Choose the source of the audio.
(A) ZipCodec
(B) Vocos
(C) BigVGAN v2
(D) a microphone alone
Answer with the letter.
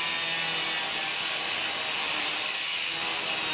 D